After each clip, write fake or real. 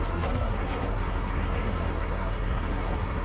fake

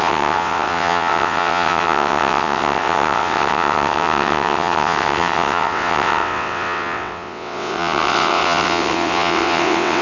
fake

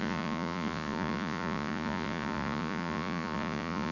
fake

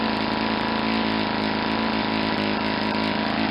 real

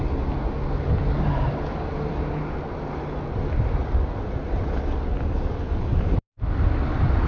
real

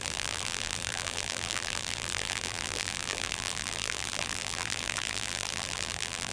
fake